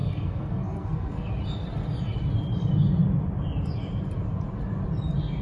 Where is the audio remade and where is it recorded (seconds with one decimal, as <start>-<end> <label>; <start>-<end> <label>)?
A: 0.0-1.3 remade; 1.3-5.4 recorded